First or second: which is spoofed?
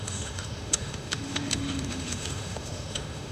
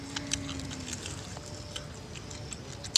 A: first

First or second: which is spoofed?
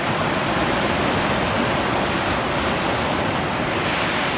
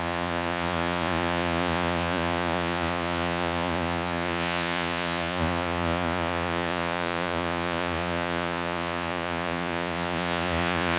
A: second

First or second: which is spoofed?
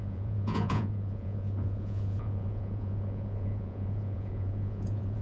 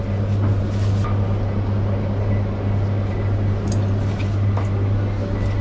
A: first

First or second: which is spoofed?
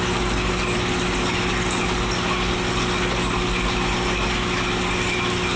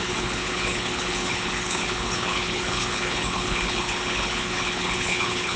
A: second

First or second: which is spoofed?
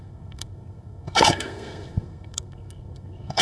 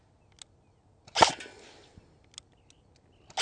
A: first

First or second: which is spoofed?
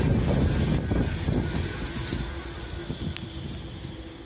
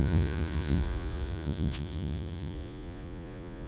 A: second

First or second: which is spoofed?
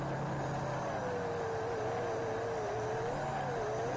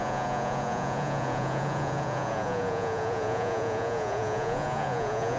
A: second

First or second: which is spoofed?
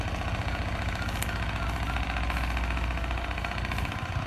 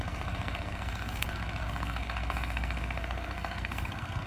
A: second